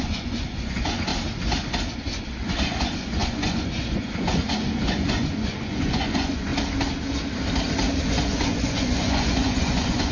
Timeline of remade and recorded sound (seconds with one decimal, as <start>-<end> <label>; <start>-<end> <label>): 0.0-1.1 remade; 1.1-1.9 recorded; 1.9-6.5 remade; 6.5-8.0 recorded; 8.0-10.1 remade